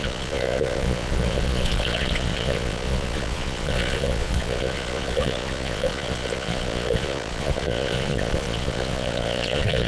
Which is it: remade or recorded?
remade